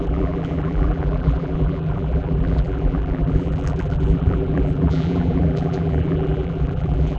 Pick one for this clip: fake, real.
fake